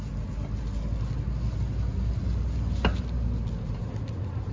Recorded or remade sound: recorded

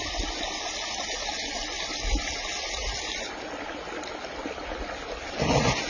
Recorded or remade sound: recorded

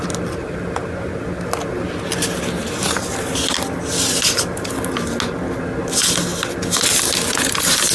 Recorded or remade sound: recorded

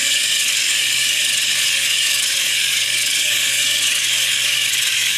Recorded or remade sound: remade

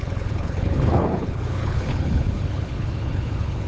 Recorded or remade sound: remade